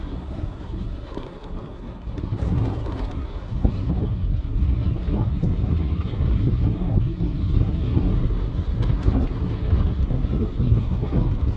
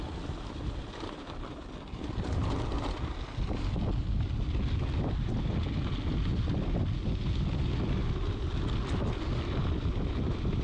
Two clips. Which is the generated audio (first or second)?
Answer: first